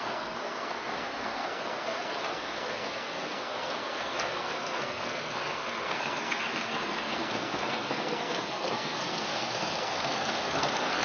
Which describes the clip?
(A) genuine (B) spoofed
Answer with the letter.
B